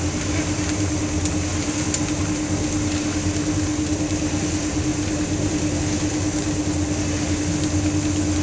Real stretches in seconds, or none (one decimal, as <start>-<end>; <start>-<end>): 0.0-4.9; 5.8-8.4